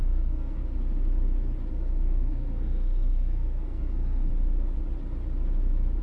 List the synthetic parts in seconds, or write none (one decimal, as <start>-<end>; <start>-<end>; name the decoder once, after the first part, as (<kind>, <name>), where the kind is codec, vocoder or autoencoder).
0.0-0.6 (codec, SNAC); 1.7-4.3